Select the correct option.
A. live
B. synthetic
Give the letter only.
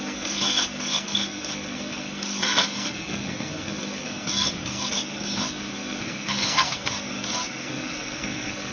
B